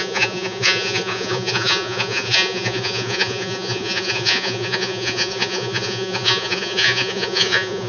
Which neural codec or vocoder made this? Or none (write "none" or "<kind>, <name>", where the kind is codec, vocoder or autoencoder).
vocoder, Vocos